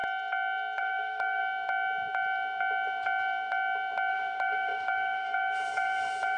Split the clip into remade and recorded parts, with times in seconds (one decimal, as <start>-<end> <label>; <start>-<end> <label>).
0.0-0.8 recorded; 0.8-1.4 remade; 1.4-4.1 recorded; 4.1-6.4 remade